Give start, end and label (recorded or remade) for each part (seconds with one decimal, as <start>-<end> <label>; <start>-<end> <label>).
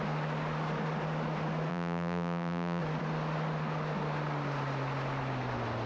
0.0-1.7 recorded; 1.7-2.8 remade; 2.8-5.9 recorded